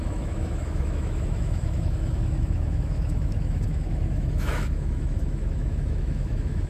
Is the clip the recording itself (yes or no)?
no